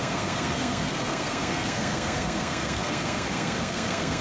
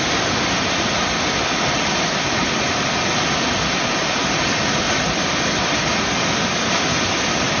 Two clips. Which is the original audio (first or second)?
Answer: second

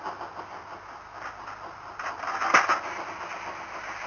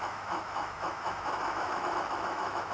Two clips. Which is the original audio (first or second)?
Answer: first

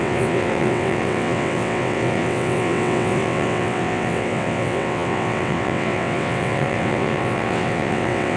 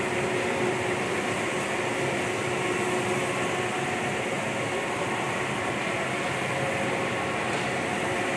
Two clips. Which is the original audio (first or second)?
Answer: second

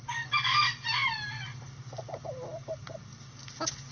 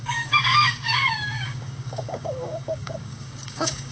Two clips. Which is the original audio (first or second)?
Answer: first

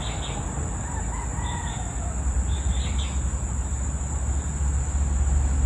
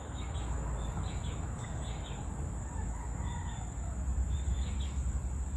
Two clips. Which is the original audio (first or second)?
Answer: first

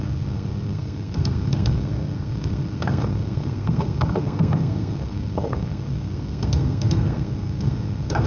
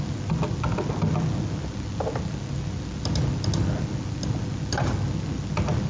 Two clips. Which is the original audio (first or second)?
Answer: second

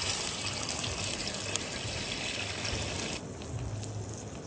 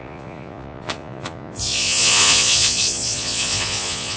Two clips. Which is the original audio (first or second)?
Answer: first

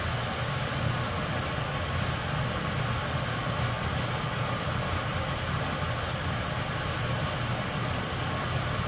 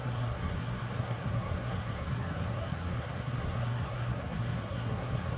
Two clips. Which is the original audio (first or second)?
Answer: first